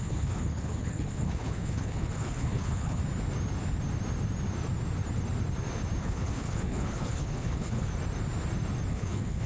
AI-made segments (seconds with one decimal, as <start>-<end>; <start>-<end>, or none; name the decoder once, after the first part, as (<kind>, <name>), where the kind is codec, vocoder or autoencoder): 0.0-3.0 (codec, HILCodec); 6.0-7.9; 8.9-9.5